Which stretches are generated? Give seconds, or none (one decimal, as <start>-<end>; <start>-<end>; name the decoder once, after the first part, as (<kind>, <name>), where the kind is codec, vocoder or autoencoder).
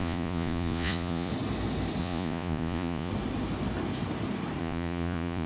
0.0-1.3 (vocoder, Vocos); 2.0-3.1; 4.6-5.5